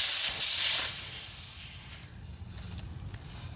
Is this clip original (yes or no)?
yes